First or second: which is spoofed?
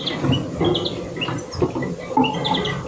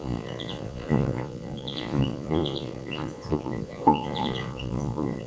second